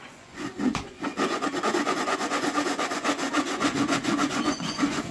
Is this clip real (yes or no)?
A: no